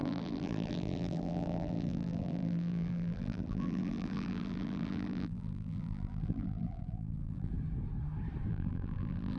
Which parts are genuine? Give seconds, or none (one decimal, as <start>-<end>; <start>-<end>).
7.5-8.5